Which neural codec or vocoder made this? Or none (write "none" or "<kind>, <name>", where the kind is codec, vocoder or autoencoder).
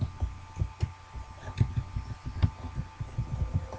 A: none